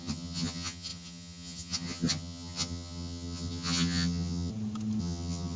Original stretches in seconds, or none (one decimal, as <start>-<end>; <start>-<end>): 4.5-5.0